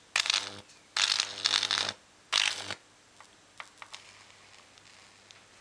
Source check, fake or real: real